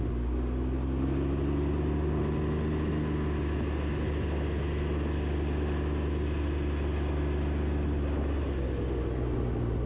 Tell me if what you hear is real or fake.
real